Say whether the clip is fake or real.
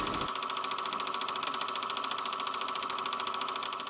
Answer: real